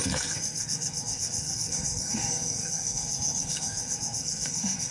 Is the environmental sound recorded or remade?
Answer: remade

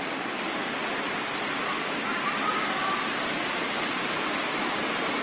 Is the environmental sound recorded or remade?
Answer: recorded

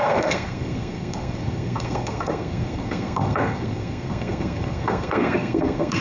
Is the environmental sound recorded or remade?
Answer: remade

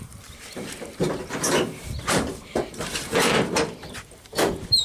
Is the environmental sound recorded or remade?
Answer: remade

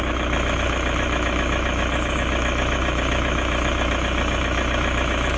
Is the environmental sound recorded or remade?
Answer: remade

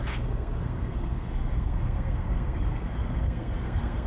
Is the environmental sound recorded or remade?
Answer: remade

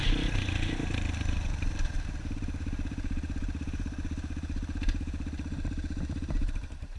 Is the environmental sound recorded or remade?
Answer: remade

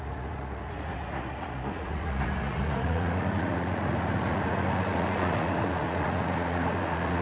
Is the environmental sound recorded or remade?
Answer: remade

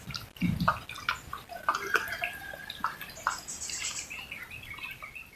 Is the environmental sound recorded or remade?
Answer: recorded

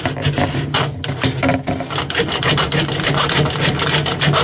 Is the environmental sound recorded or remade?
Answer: recorded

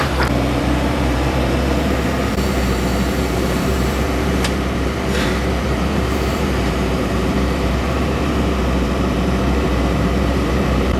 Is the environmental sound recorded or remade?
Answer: remade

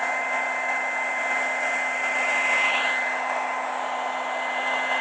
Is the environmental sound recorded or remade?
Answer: recorded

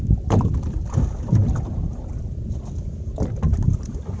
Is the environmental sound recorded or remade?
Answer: recorded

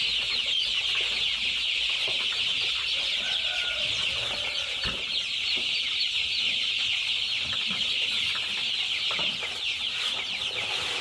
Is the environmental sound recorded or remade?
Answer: recorded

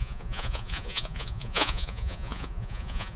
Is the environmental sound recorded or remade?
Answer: remade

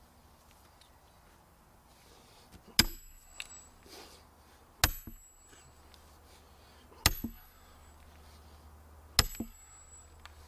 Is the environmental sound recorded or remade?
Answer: recorded